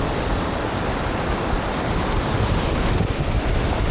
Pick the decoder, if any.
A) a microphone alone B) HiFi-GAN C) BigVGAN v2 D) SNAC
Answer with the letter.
A